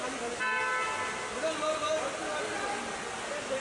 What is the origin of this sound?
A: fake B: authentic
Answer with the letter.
B